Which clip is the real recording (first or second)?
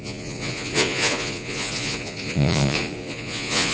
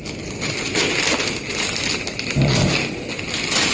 second